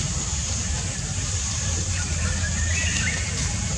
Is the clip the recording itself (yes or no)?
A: no